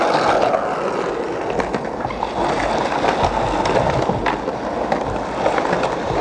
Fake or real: real